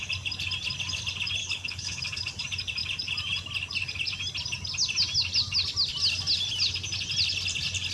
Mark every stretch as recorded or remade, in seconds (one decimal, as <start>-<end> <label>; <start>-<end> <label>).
0.0-1.4 recorded; 1.4-2.0 remade; 2.0-7.9 recorded